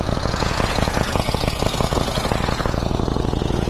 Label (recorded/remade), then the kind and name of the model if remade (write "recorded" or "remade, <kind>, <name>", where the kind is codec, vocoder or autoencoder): remade, vocoder, Vocos